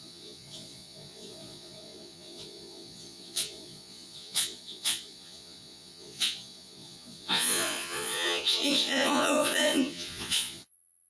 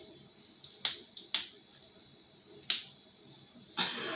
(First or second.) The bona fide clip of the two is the second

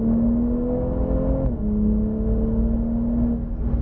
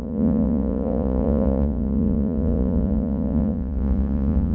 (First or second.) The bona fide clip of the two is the first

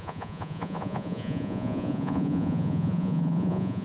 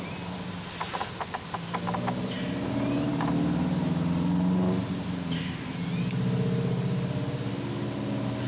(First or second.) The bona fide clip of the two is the second